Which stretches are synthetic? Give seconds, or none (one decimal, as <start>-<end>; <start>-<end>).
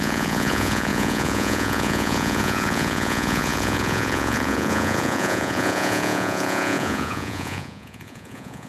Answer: 0.0-8.7